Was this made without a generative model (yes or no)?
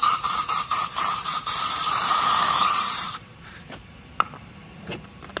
no